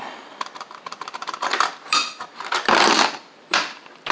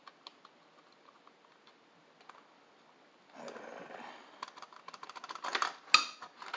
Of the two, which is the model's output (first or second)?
first